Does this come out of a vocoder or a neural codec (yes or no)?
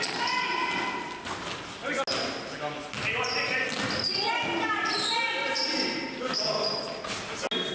no